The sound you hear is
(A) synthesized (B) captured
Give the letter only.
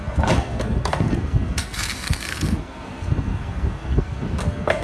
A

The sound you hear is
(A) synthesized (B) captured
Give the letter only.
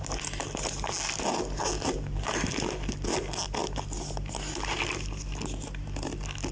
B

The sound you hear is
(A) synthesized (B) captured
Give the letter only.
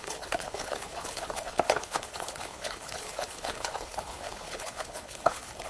A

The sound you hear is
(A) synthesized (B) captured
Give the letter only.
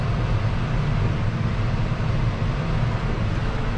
B